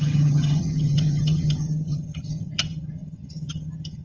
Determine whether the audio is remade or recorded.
remade